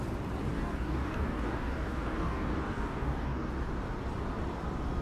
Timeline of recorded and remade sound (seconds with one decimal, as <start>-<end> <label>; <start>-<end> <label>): 0.0-0.5 recorded; 0.5-3.5 remade; 3.5-5.0 recorded